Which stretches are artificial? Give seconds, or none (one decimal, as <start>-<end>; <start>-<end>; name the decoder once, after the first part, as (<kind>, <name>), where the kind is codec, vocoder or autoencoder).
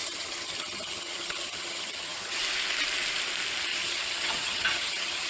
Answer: 0.0-2.4 (vocoder, HiFi-GAN); 3.7-5.3